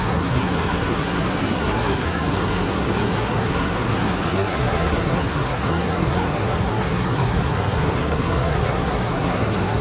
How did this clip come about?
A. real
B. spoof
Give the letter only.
B